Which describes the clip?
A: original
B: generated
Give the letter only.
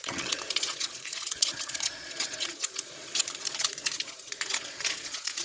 B